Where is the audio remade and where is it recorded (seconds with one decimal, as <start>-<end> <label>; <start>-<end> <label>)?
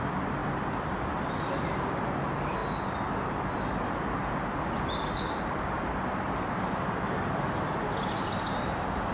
0.0-9.1 recorded